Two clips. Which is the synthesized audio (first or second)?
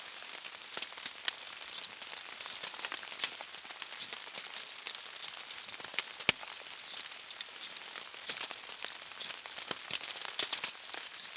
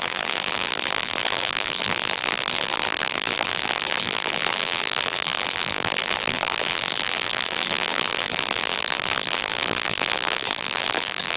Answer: second